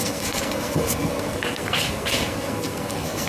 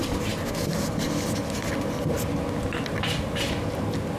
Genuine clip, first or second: second